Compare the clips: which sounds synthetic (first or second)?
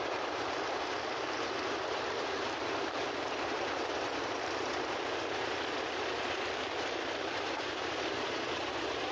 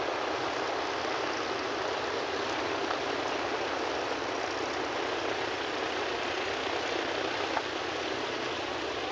first